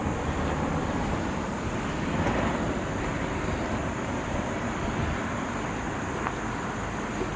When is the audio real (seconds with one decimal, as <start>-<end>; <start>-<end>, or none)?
0.0-7.4